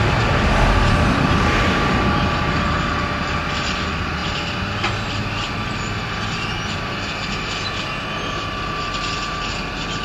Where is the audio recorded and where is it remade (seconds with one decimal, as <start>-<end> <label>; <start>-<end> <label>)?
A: 0.0-10.0 recorded